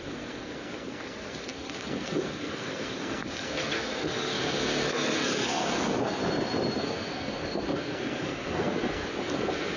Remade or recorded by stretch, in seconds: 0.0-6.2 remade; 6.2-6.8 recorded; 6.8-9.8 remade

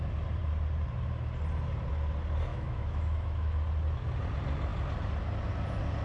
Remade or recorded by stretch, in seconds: 0.0-2.5 recorded; 2.5-3.6 remade; 3.6-6.0 recorded

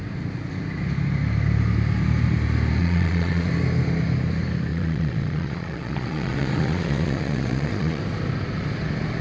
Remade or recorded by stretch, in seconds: 0.0-2.8 recorded; 2.8-3.5 remade; 3.5-4.7 recorded; 4.7-8.0 remade; 8.0-9.2 recorded

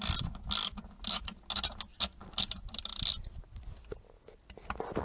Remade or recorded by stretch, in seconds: 0.0-5.0 recorded

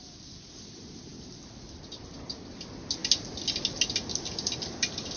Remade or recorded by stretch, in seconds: 0.0-5.2 recorded

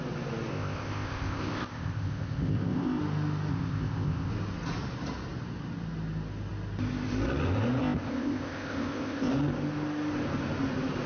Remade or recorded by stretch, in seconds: 0.0-0.5 recorded; 0.5-3.0 remade; 3.0-3.5 recorded; 3.5-4.3 remade; 4.3-7.8 recorded; 7.8-9.3 remade; 9.3-11.1 recorded

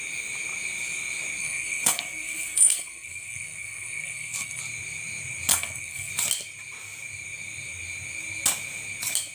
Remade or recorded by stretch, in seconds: 0.0-1.4 recorded; 1.4-4.6 remade; 4.6-5.5 recorded; 5.5-6.1 remade; 6.1-9.3 recorded